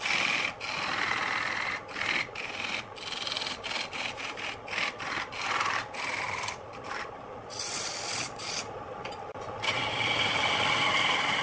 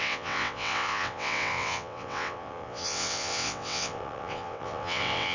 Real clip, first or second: first